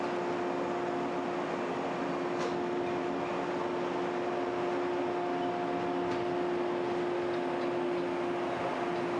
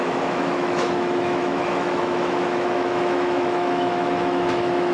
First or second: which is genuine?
first